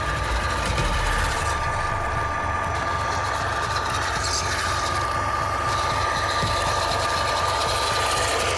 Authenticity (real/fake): real